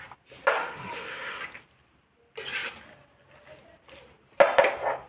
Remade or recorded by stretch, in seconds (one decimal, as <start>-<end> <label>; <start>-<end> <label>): 0.0-0.6 recorded; 0.6-1.4 remade; 1.4-5.1 recorded